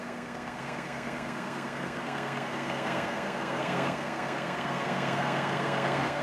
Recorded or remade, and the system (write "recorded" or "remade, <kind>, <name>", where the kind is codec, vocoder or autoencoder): remade, codec, SNAC